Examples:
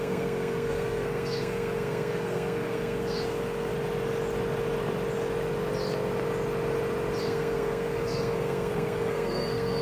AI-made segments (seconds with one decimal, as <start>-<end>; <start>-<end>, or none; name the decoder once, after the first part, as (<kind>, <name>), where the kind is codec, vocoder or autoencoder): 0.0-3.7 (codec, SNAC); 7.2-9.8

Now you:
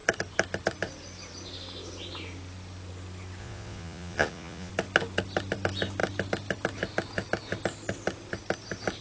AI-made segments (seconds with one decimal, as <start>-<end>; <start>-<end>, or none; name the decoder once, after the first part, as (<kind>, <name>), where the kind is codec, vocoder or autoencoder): 3.4-4.7 (vocoder, Vocos)

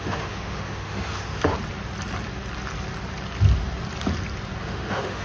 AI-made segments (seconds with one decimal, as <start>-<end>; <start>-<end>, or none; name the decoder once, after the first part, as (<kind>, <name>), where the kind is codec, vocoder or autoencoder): 0.0-1.5 (autoencoder, DAC-VAE); 4.6-5.2

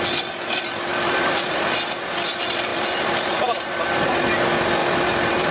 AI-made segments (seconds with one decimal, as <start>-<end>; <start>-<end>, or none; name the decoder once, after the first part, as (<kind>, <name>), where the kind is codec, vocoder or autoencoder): 0.9-1.7 (vocoder, BigVGAN v2); 2.7-3.9; 4.8-5.5